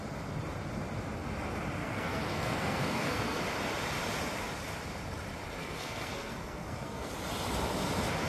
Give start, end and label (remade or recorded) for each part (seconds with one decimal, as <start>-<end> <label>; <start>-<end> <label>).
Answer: 0.0-1.8 recorded; 1.8-3.4 remade; 3.4-5.6 recorded; 5.6-7.1 remade; 7.1-8.3 recorded